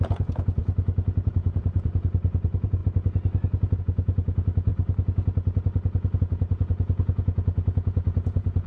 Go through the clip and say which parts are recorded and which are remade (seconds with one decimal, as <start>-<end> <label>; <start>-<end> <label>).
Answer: 0.0-0.6 remade; 0.6-1.3 recorded; 1.3-2.8 remade; 2.8-3.8 recorded; 3.8-4.7 remade; 4.7-6.2 recorded; 6.2-8.7 remade